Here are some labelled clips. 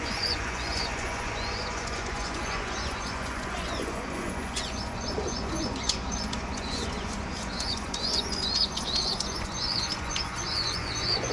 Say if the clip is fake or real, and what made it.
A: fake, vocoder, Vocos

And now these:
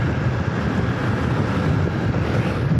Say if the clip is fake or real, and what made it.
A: real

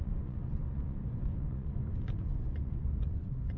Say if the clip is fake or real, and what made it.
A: fake, vocoder, Vocos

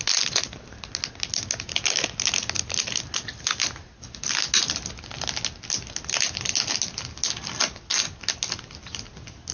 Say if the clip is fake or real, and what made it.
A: real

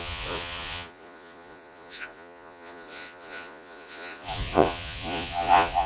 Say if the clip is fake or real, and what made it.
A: fake, vocoder, Vocos